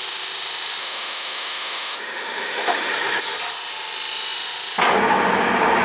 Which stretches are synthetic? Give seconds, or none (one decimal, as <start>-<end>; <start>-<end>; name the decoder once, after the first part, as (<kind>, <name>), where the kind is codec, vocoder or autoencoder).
0.8-2.9 (autoencoder, DAC-VAE)